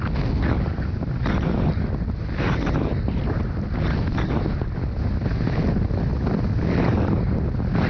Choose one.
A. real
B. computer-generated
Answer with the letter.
A